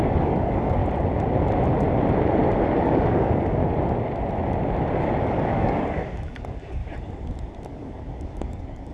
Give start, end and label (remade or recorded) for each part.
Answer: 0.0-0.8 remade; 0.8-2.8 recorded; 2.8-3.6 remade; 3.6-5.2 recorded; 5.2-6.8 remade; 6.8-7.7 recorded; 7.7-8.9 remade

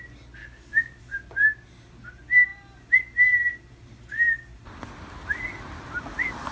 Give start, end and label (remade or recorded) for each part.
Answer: 0.0-0.4 recorded; 0.4-1.0 remade; 1.0-6.5 recorded

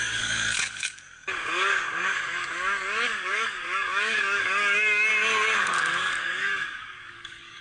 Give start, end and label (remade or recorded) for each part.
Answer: 0.0-5.1 remade; 5.1-5.6 recorded; 5.6-7.6 remade